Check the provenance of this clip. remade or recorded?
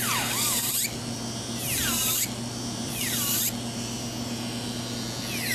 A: recorded